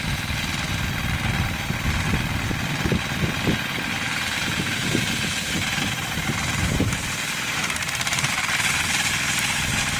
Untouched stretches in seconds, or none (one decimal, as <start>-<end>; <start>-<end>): 0.0-3.9; 8.3-10.0